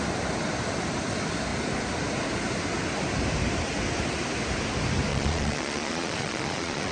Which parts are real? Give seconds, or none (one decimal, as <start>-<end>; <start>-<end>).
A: 0.0-5.1